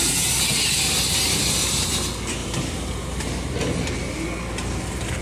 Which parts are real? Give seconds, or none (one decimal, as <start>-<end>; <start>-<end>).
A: 0.0-5.2